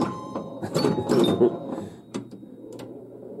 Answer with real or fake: fake